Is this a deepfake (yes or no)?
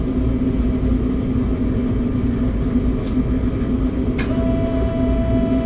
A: no